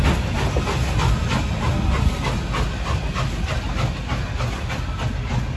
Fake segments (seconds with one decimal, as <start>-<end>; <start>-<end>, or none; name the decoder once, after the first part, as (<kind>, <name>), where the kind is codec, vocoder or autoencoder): none